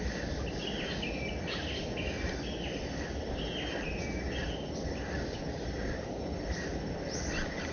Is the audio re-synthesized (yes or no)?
no